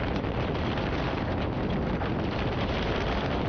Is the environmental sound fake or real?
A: real